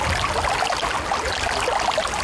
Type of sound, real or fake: real